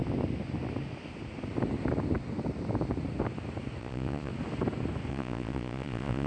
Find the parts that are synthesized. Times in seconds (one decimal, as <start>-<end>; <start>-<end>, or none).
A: 3.8-4.3; 5.1-6.3

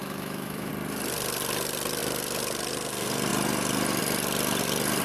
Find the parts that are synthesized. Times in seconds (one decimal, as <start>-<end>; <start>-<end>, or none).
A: 0.0-0.7